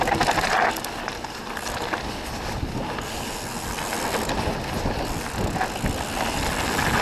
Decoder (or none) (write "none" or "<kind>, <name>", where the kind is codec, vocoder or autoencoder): none